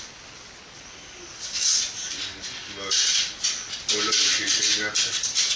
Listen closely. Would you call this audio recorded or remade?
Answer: recorded